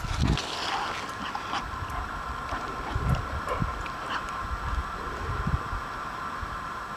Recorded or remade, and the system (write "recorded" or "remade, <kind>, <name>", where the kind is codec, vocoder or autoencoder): recorded